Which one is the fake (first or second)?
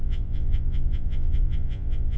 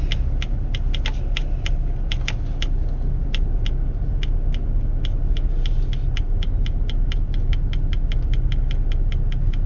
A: first